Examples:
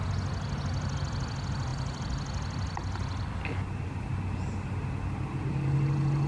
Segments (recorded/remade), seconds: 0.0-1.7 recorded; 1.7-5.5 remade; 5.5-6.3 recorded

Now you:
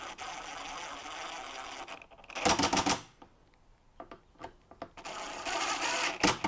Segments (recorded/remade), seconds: 0.0-6.5 recorded

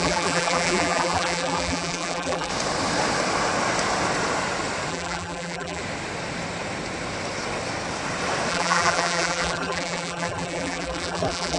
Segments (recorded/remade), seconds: 0.0-2.5 remade; 2.5-4.9 recorded; 4.9-5.8 remade; 5.8-8.5 recorded; 8.5-11.6 remade

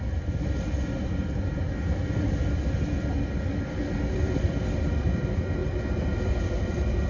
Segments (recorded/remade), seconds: 0.0-7.1 recorded

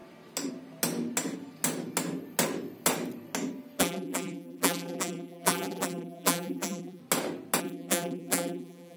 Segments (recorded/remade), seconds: 0.0-3.8 recorded; 3.8-7.0 remade; 7.0-7.6 recorded; 7.6-9.0 remade

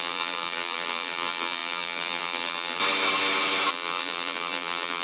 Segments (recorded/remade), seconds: 0.0-2.8 remade; 2.8-3.7 recorded; 3.7-5.0 remade